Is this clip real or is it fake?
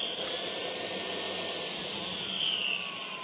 real